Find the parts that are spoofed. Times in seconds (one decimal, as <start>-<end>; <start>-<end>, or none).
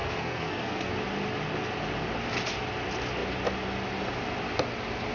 0.0-0.9